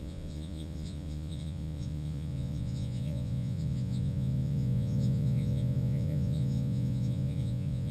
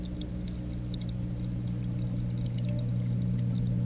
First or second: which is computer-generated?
first